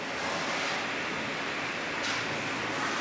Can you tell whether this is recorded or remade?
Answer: recorded